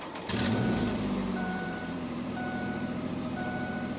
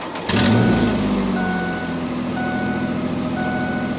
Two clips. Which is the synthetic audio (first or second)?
first